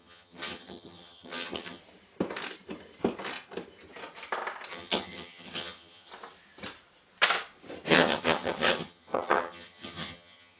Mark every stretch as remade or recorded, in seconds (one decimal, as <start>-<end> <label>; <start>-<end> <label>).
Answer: 0.0-1.8 remade; 1.8-4.7 recorded; 4.7-6.1 remade; 6.1-7.9 recorded; 7.9-10.6 remade